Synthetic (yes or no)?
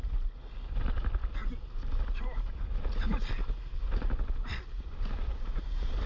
no